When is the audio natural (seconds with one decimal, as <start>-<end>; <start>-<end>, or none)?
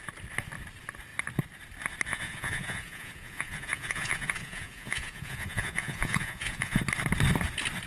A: 0.0-2.1; 6.8-7.9